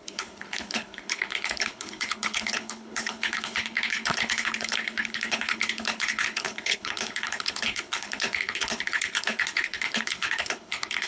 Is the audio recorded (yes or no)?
no